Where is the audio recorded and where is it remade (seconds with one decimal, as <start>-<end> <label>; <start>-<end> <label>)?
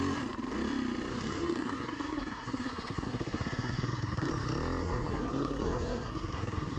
0.0-1.1 recorded; 1.1-4.3 remade; 4.3-4.8 recorded; 4.8-6.8 remade